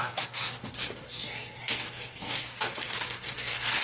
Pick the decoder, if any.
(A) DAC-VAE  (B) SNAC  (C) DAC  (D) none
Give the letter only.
B